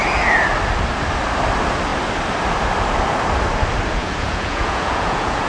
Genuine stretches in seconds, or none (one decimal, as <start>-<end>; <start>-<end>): 0.0-4.0